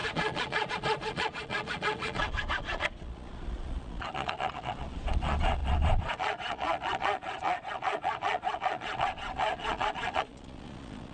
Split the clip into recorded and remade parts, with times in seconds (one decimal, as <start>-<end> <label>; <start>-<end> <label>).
0.0-11.1 remade